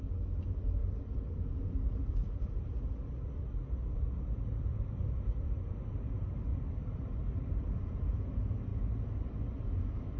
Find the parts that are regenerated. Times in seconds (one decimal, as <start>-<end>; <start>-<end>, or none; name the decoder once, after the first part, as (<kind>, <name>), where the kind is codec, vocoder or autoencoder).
0.8-5.7 (vocoder, BigVGAN v2); 6.5-7.2; 8.7-9.4